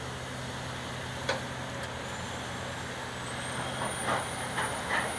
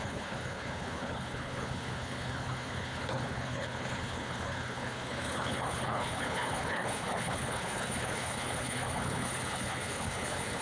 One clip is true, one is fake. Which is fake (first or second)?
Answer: second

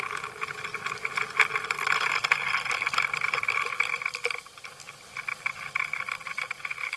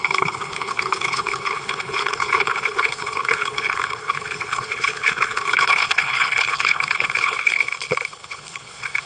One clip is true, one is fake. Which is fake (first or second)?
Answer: second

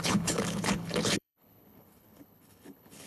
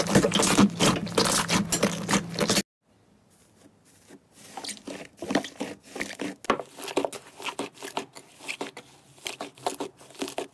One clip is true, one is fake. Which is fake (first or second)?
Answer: first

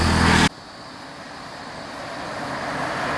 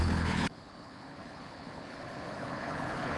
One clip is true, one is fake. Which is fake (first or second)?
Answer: second